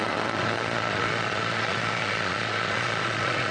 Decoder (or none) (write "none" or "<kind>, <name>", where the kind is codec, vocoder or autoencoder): vocoder, Vocos